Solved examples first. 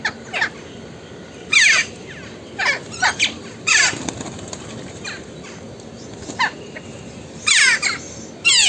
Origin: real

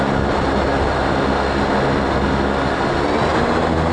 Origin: real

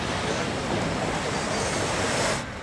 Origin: real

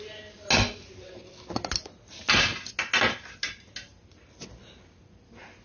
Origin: real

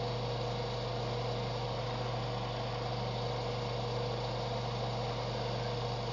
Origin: real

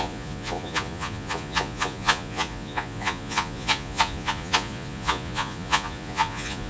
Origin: fake